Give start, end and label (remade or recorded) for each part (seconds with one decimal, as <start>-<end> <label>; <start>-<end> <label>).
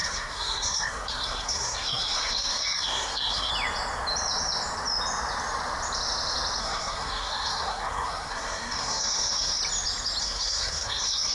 0.0-3.5 remade; 3.5-6.6 recorded; 6.6-9.6 remade; 9.6-10.2 recorded; 10.2-11.3 remade